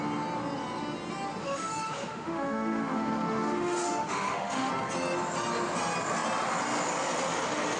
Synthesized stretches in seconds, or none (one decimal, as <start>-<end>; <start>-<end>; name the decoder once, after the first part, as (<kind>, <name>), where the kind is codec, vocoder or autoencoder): 1.4-4.7 (autoencoder, DAC-VAE)